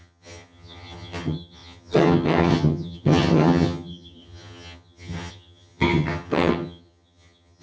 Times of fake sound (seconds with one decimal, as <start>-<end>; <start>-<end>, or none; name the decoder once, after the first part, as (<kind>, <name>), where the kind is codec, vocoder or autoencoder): 0.0-7.6 (vocoder, HiFi-GAN)